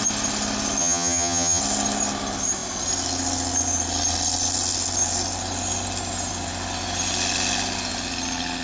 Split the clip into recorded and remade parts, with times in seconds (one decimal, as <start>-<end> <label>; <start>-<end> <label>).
0.0-0.8 recorded; 0.8-1.6 remade; 1.6-8.6 recorded